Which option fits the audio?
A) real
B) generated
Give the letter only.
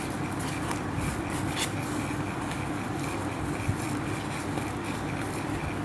A